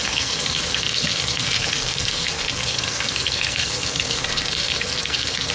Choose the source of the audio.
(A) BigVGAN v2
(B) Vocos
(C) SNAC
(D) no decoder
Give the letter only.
C